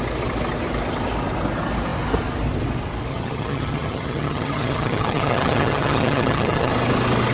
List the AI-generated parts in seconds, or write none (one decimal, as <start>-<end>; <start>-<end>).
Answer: 3.1-6.7